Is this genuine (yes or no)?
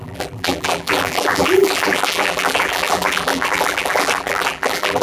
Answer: no